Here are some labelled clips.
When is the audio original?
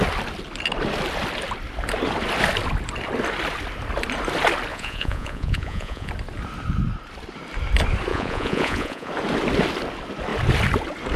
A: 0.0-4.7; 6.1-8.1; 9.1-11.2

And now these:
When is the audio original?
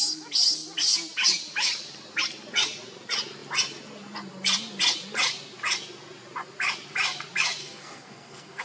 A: 0.0-7.6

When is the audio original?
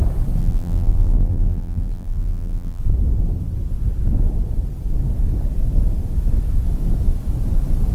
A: 0.0-0.4; 2.8-7.9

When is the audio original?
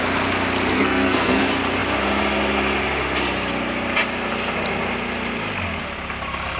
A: 0.0-0.7; 1.4-6.6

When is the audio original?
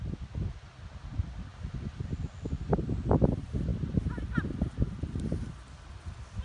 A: 0.0-6.4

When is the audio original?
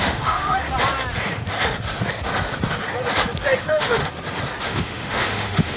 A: 0.6-3.6; 4.0-4.6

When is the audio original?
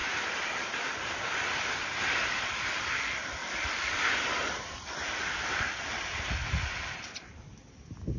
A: 0.0-3.4; 5.6-8.2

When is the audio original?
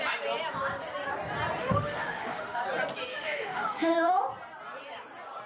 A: 0.0-1.6; 2.6-3.1; 4.2-5.5